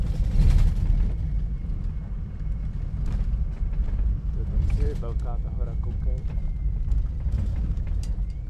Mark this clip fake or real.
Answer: real